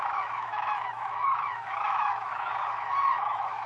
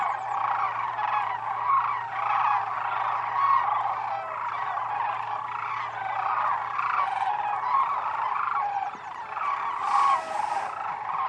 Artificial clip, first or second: first